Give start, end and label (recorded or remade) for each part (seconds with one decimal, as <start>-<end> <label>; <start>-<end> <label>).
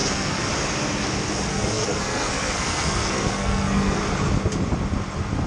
0.0-0.5 remade; 0.5-1.5 recorded; 1.5-4.0 remade; 4.0-5.5 recorded